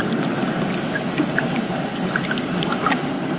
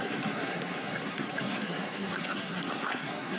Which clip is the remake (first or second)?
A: second